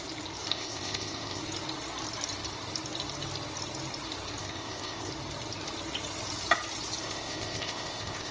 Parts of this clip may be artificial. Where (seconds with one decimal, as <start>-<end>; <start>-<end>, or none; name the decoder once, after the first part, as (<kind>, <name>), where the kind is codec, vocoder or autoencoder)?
0.5-1.4 (codec, ZipCodec); 4.4-5.1; 7.0-8.3

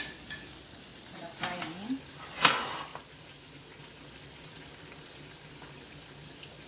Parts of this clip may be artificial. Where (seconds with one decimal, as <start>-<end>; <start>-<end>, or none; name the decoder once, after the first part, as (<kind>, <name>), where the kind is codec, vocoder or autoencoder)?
0.9-1.6 (vocoder, BigVGAN v2)

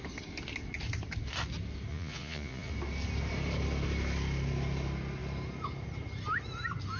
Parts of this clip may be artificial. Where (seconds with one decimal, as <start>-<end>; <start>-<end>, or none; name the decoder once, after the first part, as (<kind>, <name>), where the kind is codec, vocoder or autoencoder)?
1.9-2.7 (vocoder, Vocos)